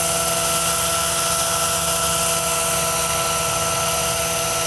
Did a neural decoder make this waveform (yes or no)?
no